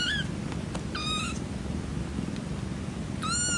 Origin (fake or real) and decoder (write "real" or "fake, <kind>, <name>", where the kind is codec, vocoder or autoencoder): real